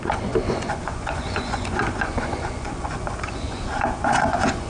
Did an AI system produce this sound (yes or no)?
yes